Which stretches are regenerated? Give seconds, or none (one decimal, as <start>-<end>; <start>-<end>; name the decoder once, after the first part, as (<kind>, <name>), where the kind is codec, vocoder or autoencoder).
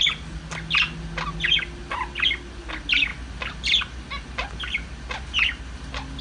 none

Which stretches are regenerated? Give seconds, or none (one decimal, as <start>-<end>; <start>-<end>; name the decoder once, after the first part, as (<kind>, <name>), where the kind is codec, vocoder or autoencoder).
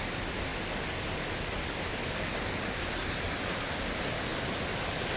none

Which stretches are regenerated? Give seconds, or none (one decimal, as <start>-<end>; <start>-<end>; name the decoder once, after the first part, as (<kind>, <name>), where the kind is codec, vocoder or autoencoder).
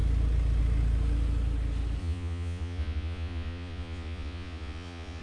2.0-5.2 (vocoder, Vocos)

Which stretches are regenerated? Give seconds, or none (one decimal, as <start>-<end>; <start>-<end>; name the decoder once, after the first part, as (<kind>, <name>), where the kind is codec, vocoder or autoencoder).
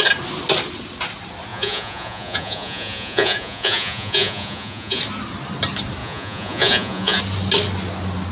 1.5-5.0 (vocoder, Vocos); 6.0-7.2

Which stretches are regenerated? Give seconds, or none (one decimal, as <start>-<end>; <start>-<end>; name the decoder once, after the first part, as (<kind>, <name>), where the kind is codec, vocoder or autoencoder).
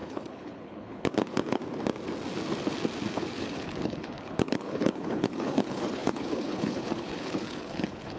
0.0-1.6 (codec, HILCodec); 3.1-8.2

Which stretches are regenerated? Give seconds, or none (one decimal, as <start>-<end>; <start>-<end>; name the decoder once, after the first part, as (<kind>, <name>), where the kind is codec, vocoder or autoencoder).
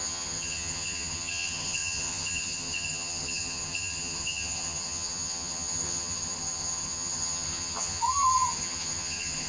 0.0-9.5 (vocoder, HiFi-GAN)